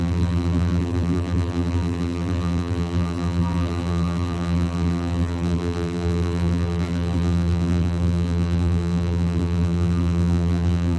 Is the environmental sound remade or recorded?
remade